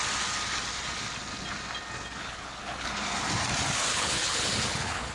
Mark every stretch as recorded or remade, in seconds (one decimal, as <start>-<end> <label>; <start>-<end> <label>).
0.0-2.2 recorded; 2.2-2.9 remade; 2.9-3.9 recorded; 3.9-5.1 remade